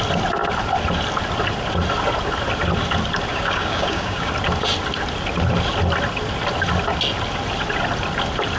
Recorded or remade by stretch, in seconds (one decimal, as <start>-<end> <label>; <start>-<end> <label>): 0.0-3.3 recorded; 3.3-4.3 remade; 4.3-8.6 recorded